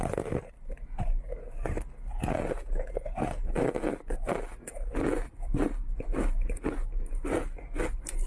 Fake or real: real